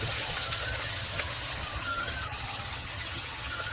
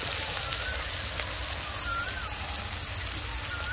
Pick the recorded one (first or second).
second